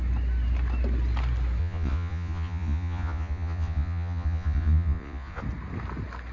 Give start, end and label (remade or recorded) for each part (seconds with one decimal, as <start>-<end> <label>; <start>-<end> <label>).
0.0-1.6 recorded; 1.6-5.4 remade; 5.4-6.3 recorded